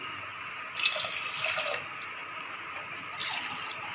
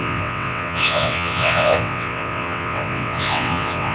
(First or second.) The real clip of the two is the first